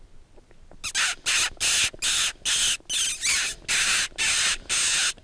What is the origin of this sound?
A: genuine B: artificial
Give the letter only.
A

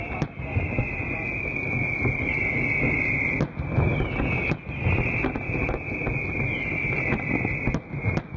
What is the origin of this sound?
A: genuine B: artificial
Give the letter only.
A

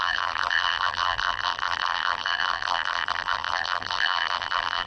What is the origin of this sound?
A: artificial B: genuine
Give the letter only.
A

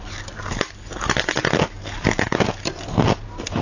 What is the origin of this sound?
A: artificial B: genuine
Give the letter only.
B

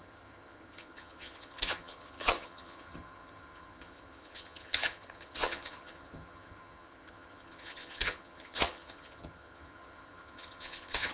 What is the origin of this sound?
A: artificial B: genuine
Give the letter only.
A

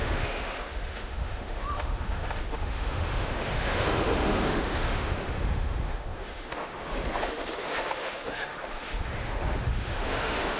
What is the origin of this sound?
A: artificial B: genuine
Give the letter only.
A